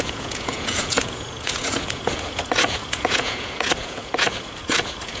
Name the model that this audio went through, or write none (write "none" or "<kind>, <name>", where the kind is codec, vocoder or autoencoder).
vocoder, Vocos